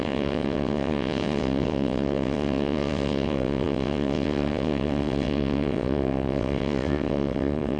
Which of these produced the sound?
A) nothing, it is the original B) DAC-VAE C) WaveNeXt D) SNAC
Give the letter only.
C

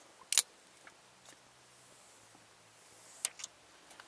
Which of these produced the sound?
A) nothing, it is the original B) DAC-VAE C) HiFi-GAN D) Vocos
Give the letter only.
A